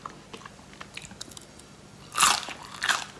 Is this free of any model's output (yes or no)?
yes